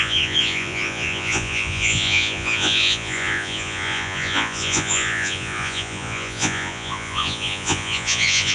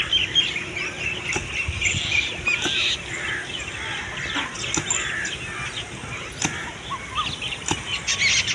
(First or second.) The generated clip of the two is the first